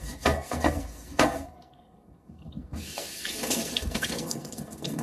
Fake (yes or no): yes